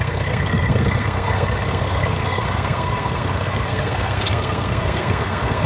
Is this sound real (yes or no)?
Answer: no